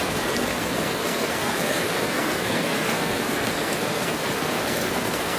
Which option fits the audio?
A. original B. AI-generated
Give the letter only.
B